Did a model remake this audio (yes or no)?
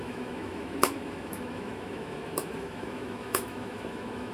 yes